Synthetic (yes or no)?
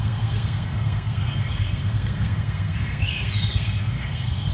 yes